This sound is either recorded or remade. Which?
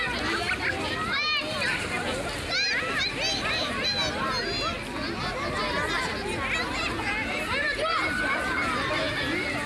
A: recorded